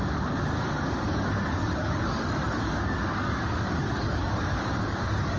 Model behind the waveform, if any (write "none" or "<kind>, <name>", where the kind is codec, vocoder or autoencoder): codec, DAC